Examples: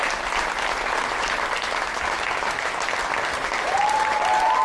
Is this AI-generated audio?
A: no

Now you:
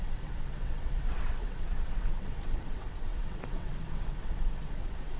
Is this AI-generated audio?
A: yes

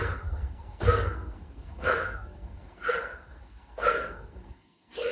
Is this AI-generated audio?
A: yes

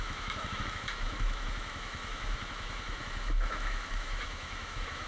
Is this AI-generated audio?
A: yes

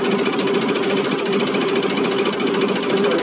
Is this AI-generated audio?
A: no